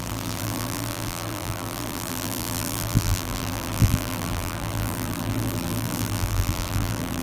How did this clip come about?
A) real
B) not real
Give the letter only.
B